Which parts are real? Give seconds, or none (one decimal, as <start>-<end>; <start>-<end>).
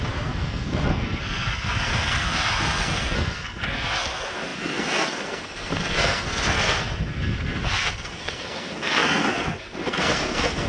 none